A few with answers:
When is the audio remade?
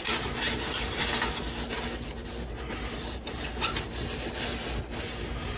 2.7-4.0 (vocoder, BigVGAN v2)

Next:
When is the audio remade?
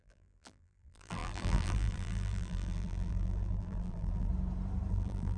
0.0-4.3 (vocoder, BigVGAN v2); 4.9-5.4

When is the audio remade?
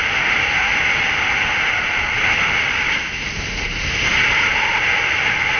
none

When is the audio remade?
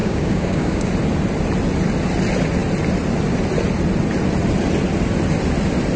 0.0-0.9 (codec, DAC)